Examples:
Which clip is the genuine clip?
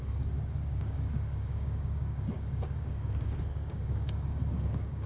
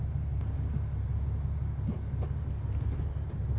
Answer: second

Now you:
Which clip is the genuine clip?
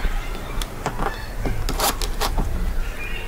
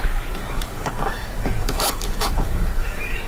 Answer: first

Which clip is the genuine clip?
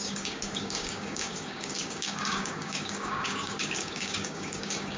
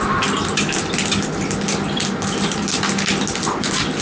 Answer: second